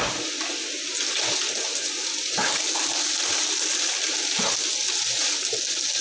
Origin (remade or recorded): recorded